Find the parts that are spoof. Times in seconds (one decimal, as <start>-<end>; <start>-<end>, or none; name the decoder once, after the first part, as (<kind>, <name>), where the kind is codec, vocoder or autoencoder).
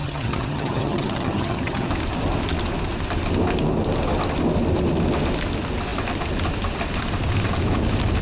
0.0-1.9 (vocoder, HiFi-GAN)